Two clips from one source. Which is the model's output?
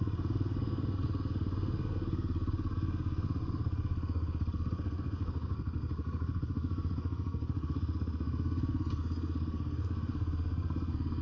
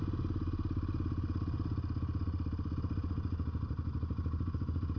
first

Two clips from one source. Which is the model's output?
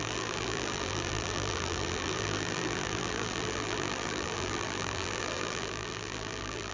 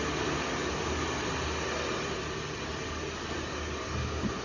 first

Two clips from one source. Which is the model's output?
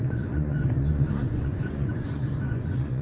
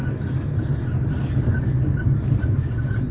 first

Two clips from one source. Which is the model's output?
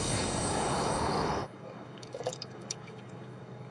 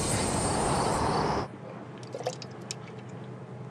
first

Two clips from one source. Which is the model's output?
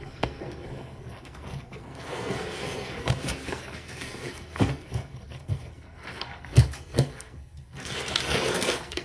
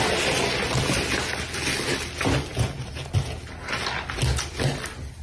first